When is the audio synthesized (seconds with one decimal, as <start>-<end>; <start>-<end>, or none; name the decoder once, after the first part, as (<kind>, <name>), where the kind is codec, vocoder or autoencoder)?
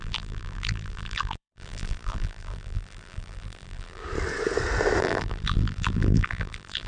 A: 0.0-4.0 (vocoder, BigVGAN v2); 5.0-6.9